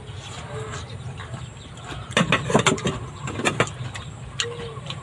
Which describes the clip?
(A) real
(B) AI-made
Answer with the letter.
A